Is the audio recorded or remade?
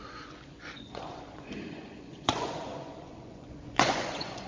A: remade